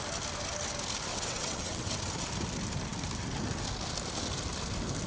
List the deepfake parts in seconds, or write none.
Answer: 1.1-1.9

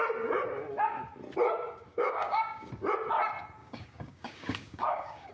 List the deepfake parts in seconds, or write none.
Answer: 1.9-2.7; 3.6-5.3

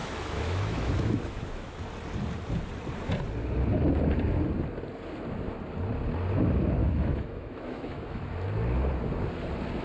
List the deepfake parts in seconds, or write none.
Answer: 0.0-1.8; 6.8-8.3

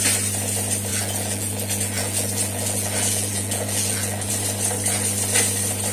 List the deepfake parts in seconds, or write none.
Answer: 0.9-4.3

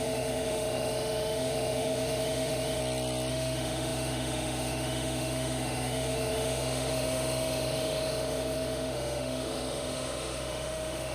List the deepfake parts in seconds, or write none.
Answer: 0.0-2.8; 3.3-11.1

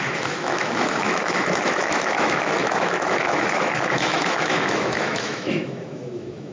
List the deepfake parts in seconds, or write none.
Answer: 0.0-6.5